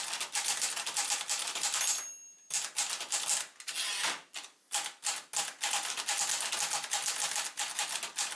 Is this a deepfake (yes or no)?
no